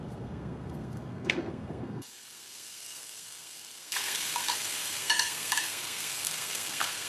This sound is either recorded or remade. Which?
remade